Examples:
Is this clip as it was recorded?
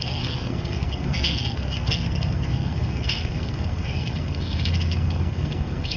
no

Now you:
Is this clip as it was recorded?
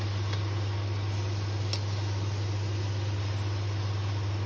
yes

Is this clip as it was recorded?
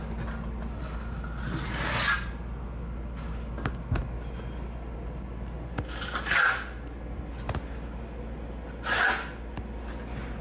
yes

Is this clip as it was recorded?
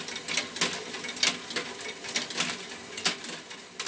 yes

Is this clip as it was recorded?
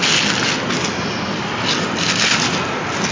yes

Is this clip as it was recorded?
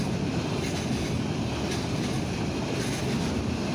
yes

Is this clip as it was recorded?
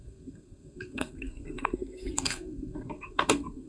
no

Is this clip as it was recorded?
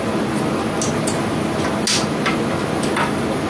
yes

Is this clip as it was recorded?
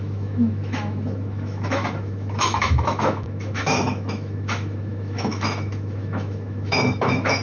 no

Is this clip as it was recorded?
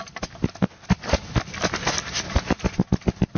yes